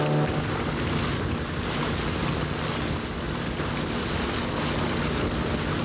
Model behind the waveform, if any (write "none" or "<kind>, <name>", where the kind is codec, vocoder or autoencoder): none